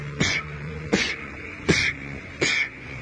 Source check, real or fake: fake